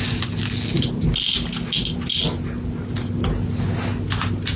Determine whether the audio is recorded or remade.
recorded